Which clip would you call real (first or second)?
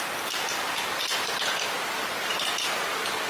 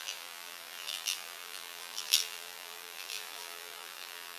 first